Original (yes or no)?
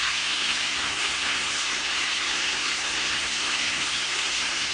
no